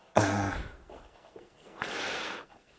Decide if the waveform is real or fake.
fake